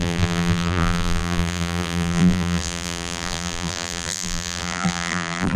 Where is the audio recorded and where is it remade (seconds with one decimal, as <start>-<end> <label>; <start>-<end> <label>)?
0.0-5.6 remade